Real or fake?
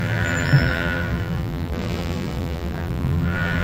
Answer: fake